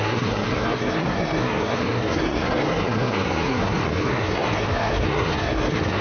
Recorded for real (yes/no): no